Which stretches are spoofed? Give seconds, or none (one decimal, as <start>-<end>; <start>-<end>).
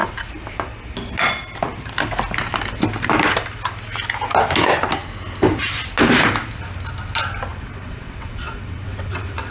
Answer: 7.5-9.5